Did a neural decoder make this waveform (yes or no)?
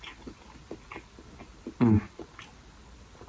no